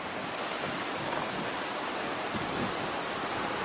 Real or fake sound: real